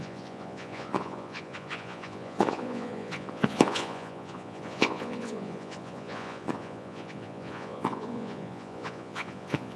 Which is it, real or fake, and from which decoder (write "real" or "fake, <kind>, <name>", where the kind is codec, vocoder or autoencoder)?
fake, vocoder, Vocos